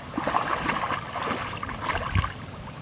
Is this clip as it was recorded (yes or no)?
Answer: yes